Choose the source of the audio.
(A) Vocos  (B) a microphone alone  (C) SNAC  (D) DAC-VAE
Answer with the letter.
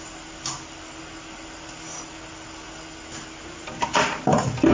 B